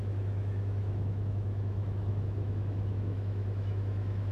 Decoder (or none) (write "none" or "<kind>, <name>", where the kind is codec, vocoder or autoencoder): autoencoder, DAC-VAE